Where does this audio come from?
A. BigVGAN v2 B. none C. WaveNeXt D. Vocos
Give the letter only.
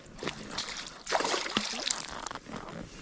B